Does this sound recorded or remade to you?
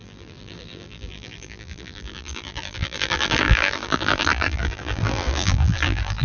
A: remade